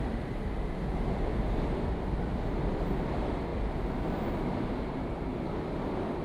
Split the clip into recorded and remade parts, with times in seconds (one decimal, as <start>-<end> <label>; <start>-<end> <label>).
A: 0.0-1.3 remade; 1.3-2.7 recorded; 2.7-3.5 remade; 3.5-4.3 recorded; 4.3-5.3 remade; 5.3-6.2 recorded